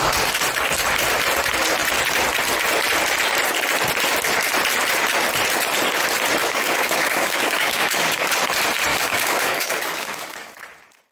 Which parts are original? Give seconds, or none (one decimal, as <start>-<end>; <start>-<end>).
0.0-6.4; 8.3-8.9; 10.5-11.1